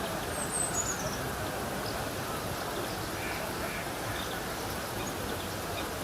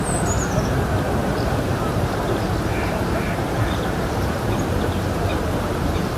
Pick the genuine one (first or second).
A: first